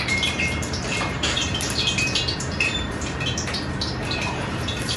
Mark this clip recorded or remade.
remade